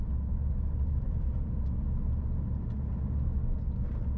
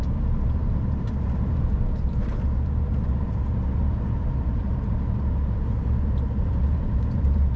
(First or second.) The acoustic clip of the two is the first